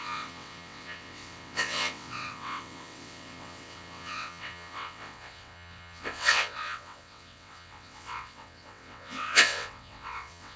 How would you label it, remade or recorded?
remade